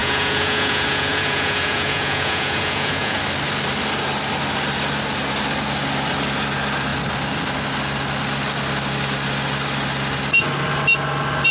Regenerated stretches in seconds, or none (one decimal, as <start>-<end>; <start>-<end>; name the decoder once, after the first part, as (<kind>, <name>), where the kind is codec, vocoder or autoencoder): 0.0-3.2 (vocoder, Vocos)